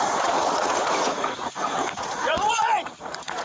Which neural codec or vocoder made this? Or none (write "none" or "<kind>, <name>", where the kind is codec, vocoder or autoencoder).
vocoder, Vocos